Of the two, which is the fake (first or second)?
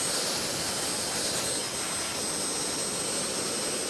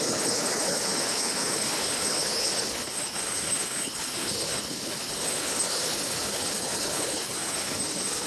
second